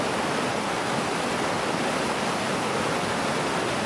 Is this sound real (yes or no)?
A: yes